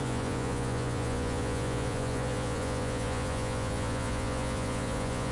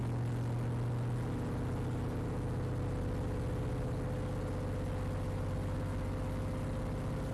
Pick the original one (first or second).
second